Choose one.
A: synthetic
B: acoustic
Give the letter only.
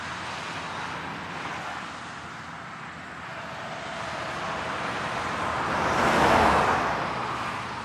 B